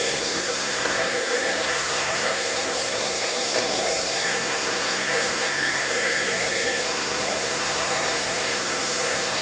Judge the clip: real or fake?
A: fake